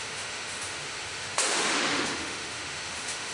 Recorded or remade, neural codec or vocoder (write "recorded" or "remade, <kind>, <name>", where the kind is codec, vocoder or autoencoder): remade, autoencoder, DAC-VAE